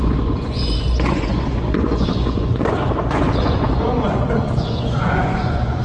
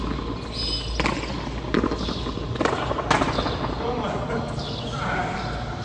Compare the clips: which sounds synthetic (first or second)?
first